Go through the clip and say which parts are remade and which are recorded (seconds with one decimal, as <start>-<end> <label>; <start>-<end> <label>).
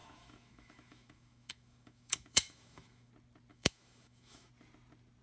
0.0-3.1 remade; 3.1-3.5 recorded; 3.5-4.5 remade; 4.5-5.2 recorded